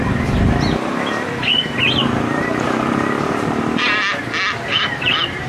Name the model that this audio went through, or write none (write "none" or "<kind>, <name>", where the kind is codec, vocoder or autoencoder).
none